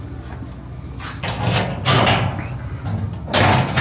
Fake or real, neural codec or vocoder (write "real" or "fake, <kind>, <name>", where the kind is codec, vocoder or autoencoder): real